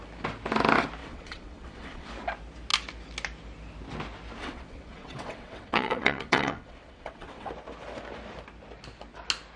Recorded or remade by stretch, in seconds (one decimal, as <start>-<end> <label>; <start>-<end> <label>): 0.0-1.0 recorded; 1.0-2.1 remade; 2.1-4.4 recorded; 4.4-7.5 remade; 7.5-9.6 recorded

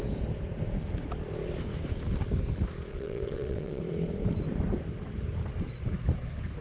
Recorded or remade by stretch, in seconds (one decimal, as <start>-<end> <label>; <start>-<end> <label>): 0.0-2.9 recorded; 2.9-3.8 remade; 3.8-6.6 recorded